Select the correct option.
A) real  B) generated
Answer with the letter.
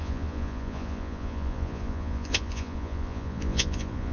B